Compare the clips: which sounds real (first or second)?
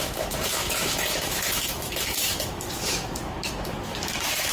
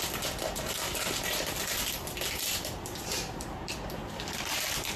second